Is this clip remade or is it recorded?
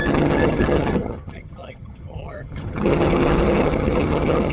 remade